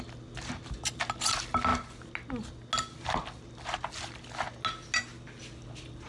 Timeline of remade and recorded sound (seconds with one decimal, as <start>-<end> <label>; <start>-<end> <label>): 0.0-6.1 recorded